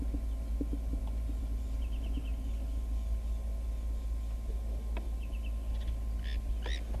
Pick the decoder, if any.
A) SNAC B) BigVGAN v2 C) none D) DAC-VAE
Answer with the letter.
C